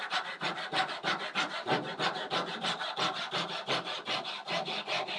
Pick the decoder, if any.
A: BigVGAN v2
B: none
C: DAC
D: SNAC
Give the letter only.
A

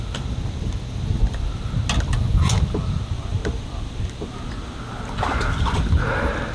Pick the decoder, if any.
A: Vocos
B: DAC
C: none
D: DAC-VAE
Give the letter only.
C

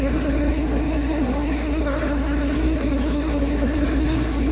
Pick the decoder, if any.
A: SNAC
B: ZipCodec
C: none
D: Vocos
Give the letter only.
A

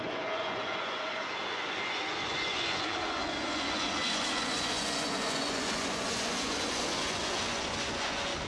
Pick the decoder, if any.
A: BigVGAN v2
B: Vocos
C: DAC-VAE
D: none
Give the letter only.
B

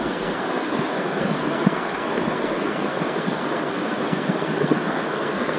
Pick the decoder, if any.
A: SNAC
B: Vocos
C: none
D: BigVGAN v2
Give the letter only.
A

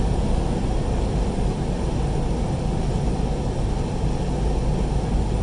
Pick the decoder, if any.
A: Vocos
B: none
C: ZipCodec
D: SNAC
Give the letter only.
B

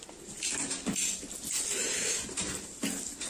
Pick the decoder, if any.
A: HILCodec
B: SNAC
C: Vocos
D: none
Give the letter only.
D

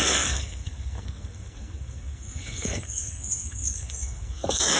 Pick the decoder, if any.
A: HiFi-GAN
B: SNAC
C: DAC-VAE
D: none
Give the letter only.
B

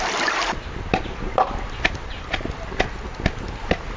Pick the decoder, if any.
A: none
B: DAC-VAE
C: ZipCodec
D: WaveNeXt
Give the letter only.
A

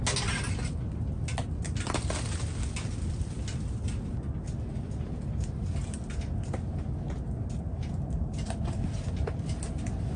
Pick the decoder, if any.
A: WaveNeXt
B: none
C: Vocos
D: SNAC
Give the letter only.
B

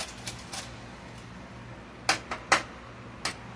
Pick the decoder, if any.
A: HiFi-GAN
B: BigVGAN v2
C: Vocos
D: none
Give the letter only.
D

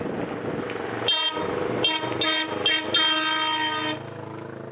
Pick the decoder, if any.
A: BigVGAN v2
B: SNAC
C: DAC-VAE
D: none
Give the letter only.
D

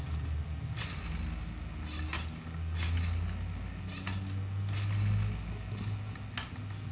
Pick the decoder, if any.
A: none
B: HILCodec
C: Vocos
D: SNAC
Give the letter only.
A